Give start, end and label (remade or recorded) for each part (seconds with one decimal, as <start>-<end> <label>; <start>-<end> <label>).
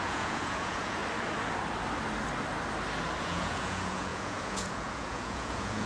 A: 0.0-1.0 remade; 1.0-3.2 recorded; 3.2-5.9 remade